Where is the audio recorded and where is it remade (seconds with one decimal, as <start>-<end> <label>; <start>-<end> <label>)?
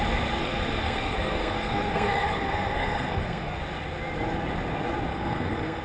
0.0-0.4 recorded; 0.4-3.6 remade; 3.6-5.1 recorded; 5.1-5.8 remade